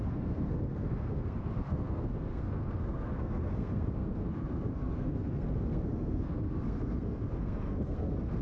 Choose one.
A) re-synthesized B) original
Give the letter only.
A